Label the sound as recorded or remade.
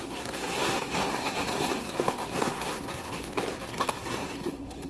remade